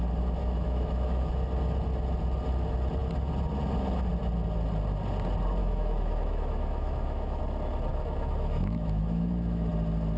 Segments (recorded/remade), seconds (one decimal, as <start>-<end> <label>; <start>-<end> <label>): 0.0-0.4 recorded; 0.4-1.3 remade; 1.3-5.6 recorded; 5.6-7.4 remade; 7.4-7.9 recorded; 7.9-9.7 remade; 9.7-10.2 recorded